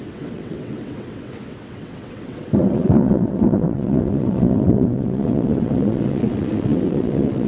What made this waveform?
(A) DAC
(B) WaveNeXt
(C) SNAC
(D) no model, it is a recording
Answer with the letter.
B